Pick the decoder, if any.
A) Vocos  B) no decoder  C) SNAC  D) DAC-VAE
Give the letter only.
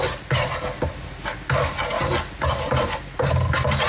B